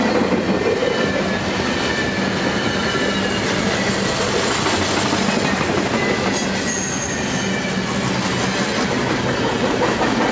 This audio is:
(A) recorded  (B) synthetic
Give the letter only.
A